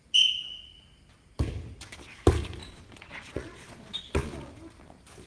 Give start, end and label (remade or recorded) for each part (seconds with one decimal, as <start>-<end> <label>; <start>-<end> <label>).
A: 0.0-2.6 recorded; 2.6-4.5 remade; 4.5-5.3 recorded